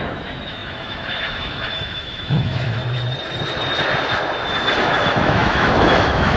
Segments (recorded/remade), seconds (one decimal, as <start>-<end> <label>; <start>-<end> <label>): 0.0-2.8 remade; 2.8-4.8 recorded; 4.8-6.4 remade